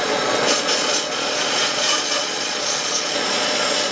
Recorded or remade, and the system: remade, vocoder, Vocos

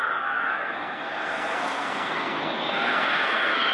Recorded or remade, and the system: remade, codec, SNAC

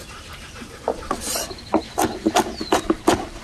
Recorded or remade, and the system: recorded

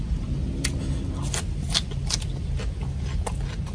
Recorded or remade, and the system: recorded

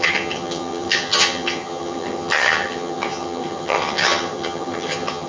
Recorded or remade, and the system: remade, vocoder, HiFi-GAN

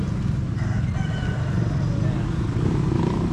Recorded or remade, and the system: recorded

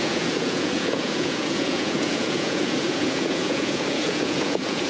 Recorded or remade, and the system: remade, vocoder, Vocos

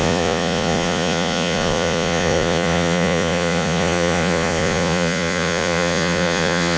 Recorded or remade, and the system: remade, vocoder, Vocos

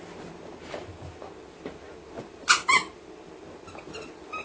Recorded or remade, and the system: recorded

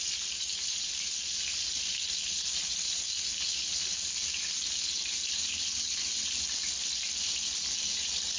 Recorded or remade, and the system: recorded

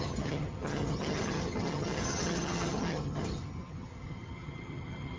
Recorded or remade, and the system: remade, vocoder, HiFi-GAN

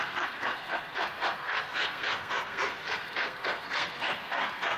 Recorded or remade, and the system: remade, codec, SNAC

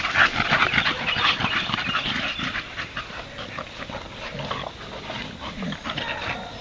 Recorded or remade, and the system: recorded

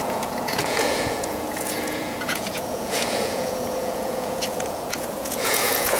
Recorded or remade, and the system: remade, vocoder, Vocos